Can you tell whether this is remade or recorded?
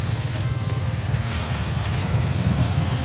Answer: remade